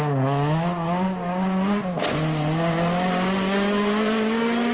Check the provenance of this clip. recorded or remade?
recorded